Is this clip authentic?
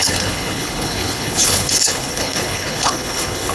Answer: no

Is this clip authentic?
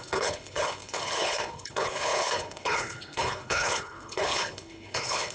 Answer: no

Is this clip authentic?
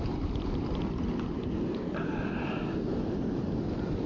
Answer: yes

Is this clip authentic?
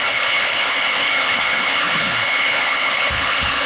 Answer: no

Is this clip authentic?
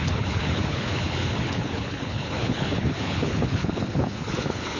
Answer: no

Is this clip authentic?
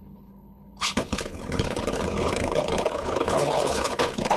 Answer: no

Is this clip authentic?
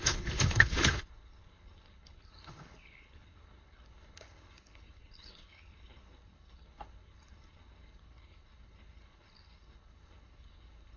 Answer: no